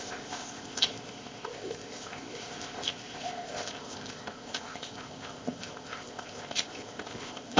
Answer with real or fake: fake